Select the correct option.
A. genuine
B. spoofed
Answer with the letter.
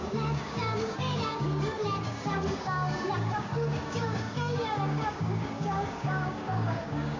B